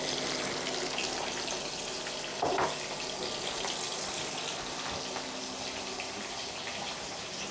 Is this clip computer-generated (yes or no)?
no